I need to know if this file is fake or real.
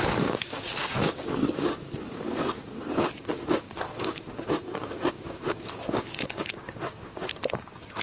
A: fake